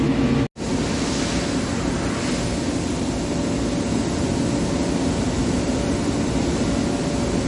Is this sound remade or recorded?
recorded